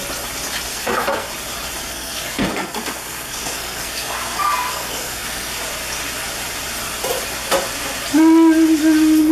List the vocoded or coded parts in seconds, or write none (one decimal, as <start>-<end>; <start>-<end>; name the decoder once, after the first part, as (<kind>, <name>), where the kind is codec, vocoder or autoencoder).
0.7-1.3 (codec, SNAC); 1.8-5.6

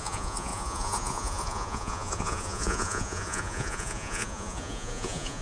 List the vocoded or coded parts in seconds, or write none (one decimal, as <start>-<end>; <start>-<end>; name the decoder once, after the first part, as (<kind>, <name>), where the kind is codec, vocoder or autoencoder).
0.0-5.4 (vocoder, Vocos)

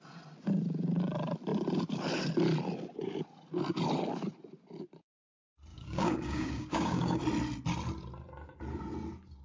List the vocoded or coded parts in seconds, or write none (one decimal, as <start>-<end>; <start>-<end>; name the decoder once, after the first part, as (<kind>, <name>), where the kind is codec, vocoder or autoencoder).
5.7-7.2 (codec, DAC)

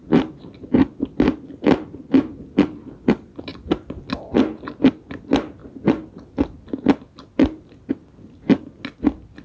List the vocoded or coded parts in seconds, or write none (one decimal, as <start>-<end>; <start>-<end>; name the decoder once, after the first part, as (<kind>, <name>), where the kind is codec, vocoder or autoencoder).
none

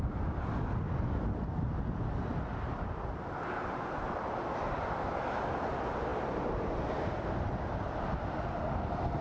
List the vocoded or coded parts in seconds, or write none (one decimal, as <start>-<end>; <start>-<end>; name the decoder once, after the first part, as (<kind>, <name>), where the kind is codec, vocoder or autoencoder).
none

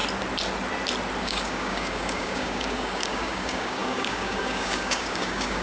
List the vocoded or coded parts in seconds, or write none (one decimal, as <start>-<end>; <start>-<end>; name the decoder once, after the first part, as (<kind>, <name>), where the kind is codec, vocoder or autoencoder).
1.2-5.6 (codec, DAC)